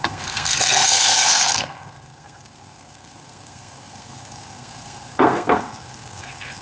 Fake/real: fake